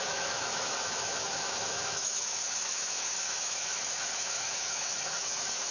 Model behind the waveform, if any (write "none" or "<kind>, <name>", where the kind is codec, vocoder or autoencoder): autoencoder, DAC-VAE